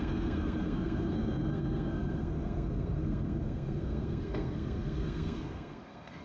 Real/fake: fake